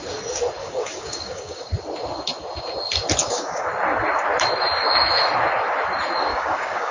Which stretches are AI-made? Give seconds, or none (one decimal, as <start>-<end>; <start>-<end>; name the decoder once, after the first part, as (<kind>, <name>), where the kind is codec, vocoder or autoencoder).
0.6-1.7 (codec, DAC); 3.2-3.7; 6.3-6.9